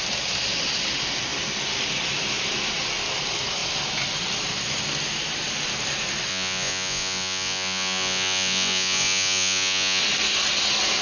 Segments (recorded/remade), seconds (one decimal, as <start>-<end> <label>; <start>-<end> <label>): 0.0-6.3 recorded; 6.3-10.0 remade; 10.0-11.0 recorded